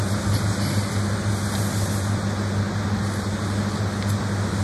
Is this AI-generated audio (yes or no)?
no